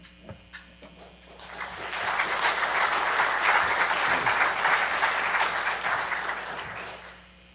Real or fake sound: real